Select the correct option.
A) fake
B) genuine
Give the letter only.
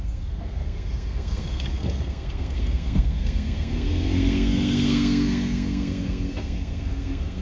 A